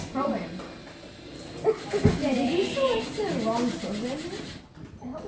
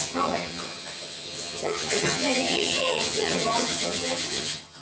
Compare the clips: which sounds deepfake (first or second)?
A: second